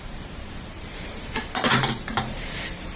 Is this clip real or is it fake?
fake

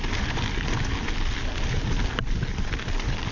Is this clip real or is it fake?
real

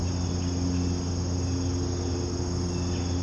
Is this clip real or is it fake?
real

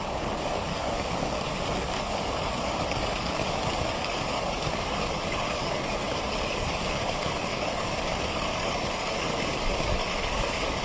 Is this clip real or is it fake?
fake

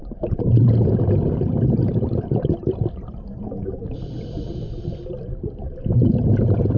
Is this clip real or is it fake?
real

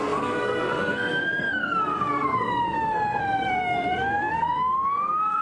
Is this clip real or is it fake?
fake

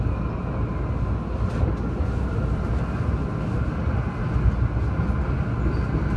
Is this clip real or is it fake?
real